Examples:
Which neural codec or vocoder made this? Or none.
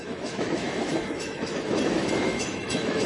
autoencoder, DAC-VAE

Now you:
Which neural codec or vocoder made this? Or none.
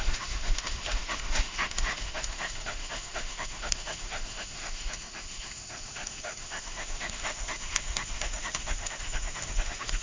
autoencoder, DAC-VAE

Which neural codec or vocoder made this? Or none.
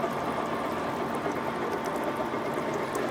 none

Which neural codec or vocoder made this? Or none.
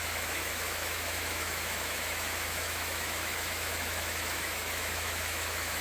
autoencoder, DAC-VAE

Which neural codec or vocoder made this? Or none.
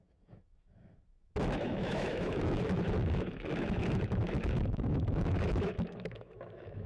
autoencoder, DAC-VAE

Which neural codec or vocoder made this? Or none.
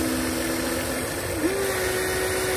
none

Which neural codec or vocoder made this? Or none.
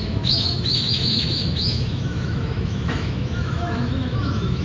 autoencoder, DAC-VAE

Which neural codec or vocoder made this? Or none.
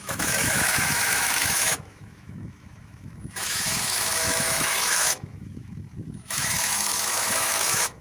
autoencoder, DAC-VAE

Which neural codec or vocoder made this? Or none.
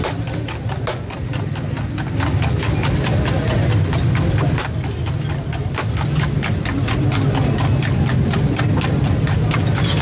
none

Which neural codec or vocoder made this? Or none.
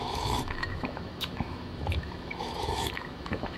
autoencoder, DAC-VAE